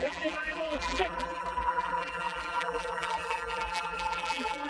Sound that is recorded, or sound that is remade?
remade